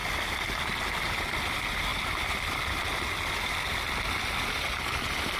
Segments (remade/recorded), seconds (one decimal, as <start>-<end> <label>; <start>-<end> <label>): 0.0-5.4 recorded